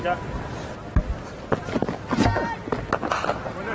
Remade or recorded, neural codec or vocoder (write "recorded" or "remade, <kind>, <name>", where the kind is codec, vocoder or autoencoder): recorded